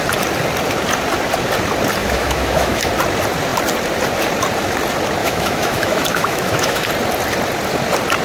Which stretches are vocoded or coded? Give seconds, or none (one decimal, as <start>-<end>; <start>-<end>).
2.0-2.9; 5.2-6.9